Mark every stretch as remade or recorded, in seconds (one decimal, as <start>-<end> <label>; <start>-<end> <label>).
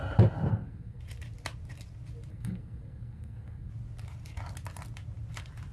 0.0-0.5 recorded; 0.5-1.0 remade; 1.0-2.3 recorded; 2.3-3.7 remade; 3.7-5.7 recorded